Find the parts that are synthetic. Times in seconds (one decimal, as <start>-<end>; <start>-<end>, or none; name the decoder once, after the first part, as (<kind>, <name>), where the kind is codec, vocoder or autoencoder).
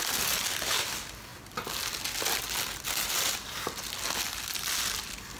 none